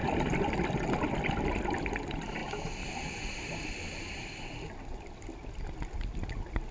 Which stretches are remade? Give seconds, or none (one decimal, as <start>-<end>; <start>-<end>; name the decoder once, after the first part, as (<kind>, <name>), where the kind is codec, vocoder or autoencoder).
none